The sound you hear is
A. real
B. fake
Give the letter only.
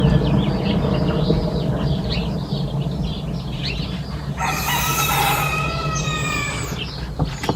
A